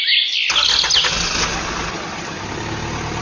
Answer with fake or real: real